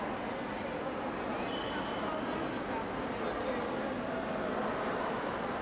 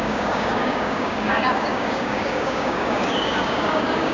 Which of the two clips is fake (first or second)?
second